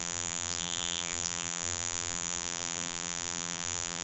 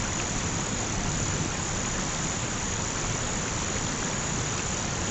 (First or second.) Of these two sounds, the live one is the second